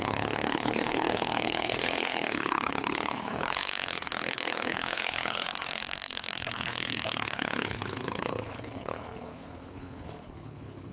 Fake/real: fake